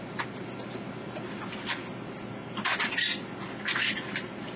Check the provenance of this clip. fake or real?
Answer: real